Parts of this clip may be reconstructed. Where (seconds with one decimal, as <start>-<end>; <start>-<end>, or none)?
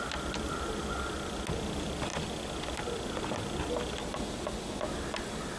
none